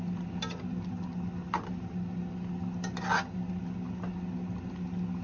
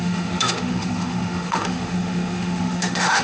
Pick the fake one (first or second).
second